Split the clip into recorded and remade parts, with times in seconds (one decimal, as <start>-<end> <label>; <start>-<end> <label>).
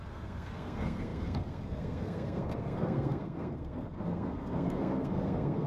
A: 0.0-5.7 remade